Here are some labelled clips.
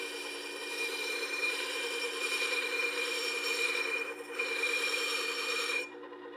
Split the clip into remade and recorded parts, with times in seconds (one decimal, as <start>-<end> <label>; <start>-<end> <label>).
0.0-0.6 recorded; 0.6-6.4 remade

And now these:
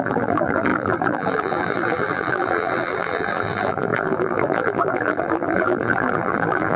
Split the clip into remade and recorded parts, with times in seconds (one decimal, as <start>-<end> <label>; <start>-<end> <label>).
0.0-6.8 remade

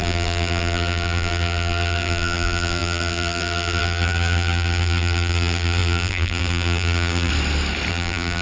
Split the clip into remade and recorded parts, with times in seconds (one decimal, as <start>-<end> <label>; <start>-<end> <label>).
0.0-7.3 remade; 7.3-7.9 recorded; 7.9-8.4 remade

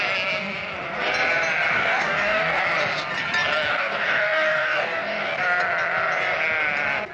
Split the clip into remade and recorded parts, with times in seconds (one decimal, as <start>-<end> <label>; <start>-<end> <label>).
0.0-1.7 recorded; 1.7-2.6 remade; 2.6-3.7 recorded; 3.7-5.4 remade; 5.4-7.1 recorded

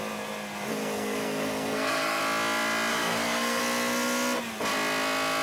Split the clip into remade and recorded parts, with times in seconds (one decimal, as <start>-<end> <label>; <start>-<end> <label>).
0.0-0.7 recorded; 0.7-2.2 remade; 2.2-2.9 recorded; 2.9-3.6 remade; 3.6-5.4 recorded

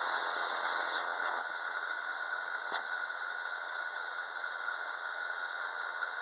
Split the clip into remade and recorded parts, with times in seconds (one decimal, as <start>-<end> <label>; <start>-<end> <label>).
0.0-6.2 remade

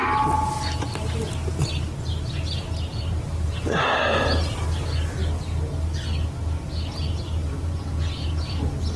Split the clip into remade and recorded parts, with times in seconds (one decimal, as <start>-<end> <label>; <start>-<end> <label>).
0.0-2.9 recorded; 2.9-4.0 remade; 4.0-7.4 recorded; 7.4-8.6 remade; 8.6-9.0 recorded

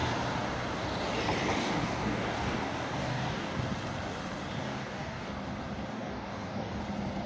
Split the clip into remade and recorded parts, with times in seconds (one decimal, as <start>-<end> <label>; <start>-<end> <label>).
0.0-1.6 recorded; 1.6-3.6 remade; 3.6-4.6 recorded; 4.6-5.3 remade; 5.3-5.9 recorded; 5.9-6.8 remade; 6.8-7.3 recorded